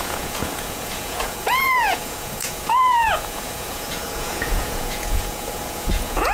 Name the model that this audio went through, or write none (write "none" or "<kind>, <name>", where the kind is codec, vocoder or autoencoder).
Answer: vocoder, Vocos